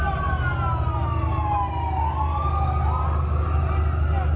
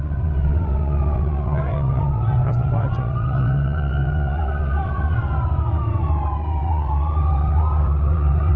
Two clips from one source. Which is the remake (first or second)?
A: second